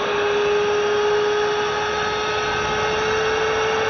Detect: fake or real real